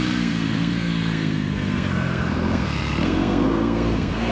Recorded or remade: remade